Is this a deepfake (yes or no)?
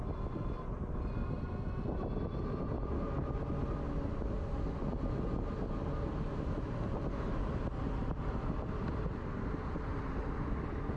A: no